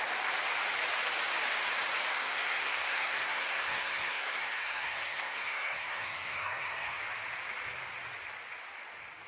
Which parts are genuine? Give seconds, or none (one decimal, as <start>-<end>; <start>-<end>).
0.0-2.1; 7.0-9.3